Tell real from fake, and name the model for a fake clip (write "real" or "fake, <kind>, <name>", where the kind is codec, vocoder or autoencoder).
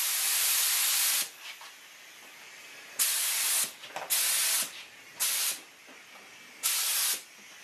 real